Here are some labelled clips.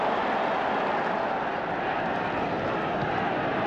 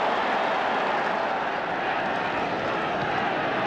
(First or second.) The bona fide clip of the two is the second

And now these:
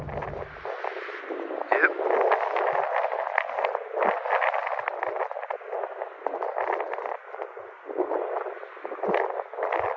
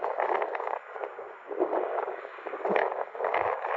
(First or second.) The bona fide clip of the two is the first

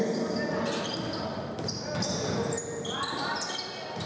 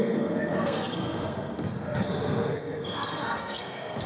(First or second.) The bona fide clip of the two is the first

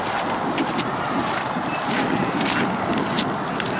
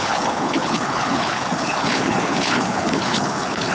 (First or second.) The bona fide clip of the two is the first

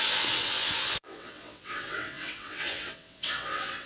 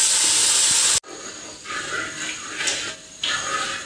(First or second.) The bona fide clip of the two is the second